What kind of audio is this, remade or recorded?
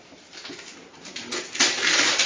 recorded